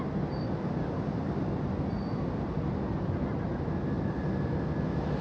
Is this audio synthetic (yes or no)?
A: no